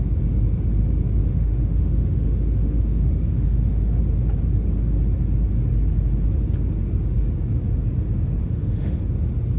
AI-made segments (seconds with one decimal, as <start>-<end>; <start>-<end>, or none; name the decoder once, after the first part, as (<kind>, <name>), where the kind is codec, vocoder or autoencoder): 1.2-4.0 (autoencoder, DAC-VAE); 8.4-9.0